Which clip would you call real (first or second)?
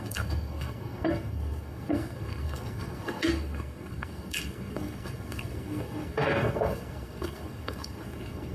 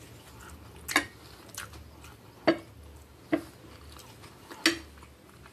second